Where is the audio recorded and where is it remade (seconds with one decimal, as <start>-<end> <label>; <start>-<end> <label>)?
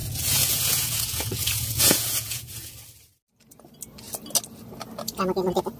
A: 0.0-2.7 remade; 2.7-5.8 recorded